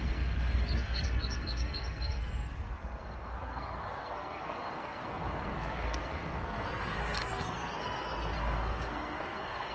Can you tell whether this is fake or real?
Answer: fake